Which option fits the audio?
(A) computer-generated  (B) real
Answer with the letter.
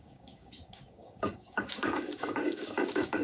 A